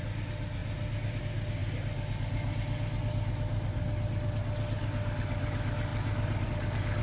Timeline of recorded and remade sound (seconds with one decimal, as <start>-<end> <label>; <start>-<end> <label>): 0.0-7.0 recorded